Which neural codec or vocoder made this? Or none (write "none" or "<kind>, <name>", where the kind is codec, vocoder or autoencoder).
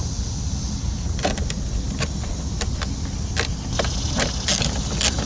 none